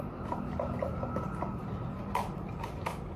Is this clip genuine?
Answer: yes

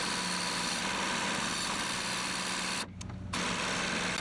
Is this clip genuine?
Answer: yes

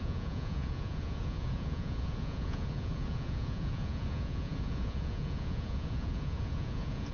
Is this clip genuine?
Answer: no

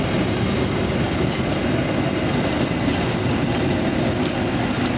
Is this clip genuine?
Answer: yes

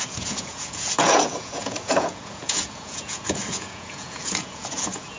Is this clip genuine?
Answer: no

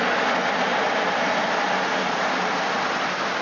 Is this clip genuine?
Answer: yes